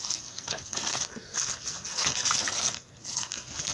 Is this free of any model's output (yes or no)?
no